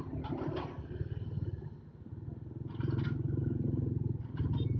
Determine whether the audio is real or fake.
real